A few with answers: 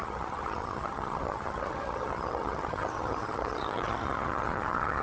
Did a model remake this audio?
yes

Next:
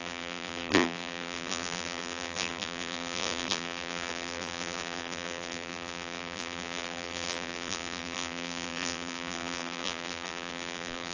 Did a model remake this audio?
yes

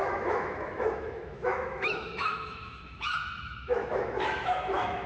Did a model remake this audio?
yes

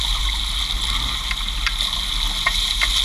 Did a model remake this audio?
no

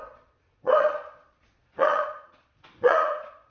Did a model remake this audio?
yes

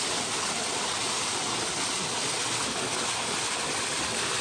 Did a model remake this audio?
no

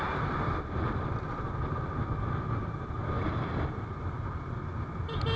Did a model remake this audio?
no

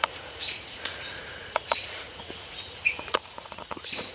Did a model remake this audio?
yes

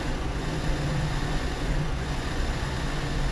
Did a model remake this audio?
yes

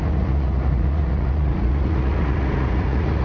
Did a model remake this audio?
yes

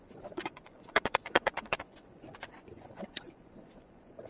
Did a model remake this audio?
yes